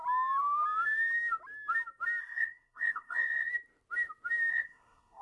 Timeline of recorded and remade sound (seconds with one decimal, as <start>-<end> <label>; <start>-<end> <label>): 0.0-2.2 recorded; 2.2-3.5 remade; 3.5-4.5 recorded; 4.5-5.2 remade